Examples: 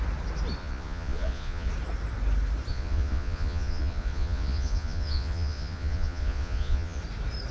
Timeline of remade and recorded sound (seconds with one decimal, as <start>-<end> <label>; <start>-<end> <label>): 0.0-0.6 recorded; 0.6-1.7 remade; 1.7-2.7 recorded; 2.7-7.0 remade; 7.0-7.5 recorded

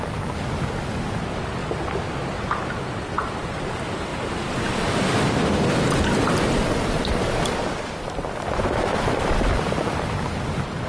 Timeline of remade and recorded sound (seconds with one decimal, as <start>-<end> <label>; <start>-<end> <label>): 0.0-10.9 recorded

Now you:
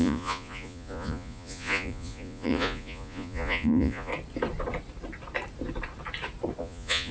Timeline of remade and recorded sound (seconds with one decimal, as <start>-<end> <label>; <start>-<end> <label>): 0.0-4.1 remade; 4.1-6.6 recorded; 6.6-7.1 remade

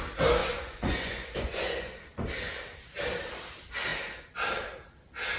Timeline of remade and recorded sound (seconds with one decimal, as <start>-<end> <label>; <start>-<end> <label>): 0.0-0.4 recorded; 0.4-2.0 remade; 2.0-5.4 recorded

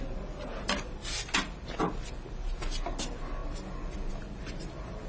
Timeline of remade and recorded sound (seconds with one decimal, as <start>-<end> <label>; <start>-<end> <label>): 0.0-5.1 recorded

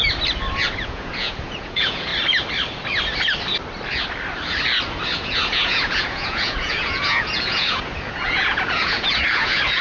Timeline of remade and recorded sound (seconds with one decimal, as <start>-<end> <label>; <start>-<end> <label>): 0.0-0.7 recorded; 0.7-2.1 remade; 2.1-5.2 recorded; 5.2-9.8 remade

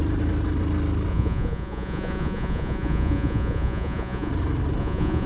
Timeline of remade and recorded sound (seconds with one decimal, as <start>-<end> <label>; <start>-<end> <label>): 0.0-1.1 recorded; 1.1-4.3 remade; 4.3-4.8 recorded; 4.8-5.3 remade

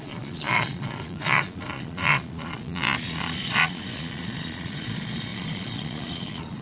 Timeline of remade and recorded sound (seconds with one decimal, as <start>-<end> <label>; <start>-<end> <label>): 0.0-6.6 remade